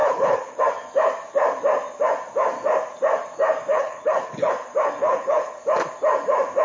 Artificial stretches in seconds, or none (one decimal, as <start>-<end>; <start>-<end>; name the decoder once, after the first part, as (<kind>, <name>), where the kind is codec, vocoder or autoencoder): 0.0-0.6 (codec, HILCodec); 3.7-4.5; 5.0-5.6